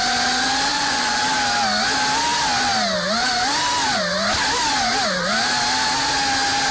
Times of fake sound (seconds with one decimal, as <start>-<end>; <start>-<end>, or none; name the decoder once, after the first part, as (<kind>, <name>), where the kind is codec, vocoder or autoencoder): 0.7-1.2 (vocoder, Vocos)